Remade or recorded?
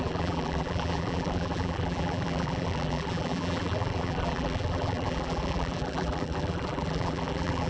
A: remade